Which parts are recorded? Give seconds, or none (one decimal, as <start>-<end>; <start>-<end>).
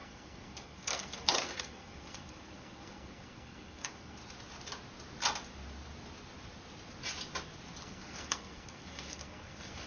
4.2-7.8